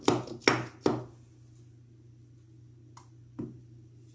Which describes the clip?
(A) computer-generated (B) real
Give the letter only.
B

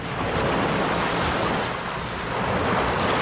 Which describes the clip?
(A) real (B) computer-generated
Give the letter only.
A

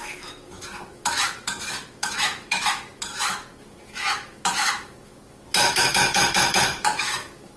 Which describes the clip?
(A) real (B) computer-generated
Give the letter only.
B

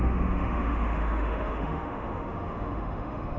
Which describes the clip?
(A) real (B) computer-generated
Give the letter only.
B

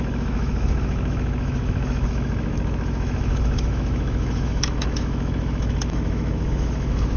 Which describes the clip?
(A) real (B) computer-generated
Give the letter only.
B